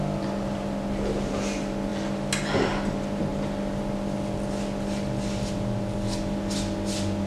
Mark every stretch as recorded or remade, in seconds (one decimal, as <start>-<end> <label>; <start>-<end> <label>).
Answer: 0.0-7.3 recorded